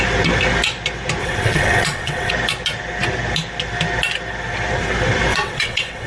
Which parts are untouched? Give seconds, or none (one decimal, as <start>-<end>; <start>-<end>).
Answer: 0.0-1.2; 2.3-5.3